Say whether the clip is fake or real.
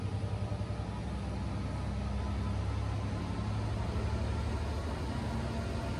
real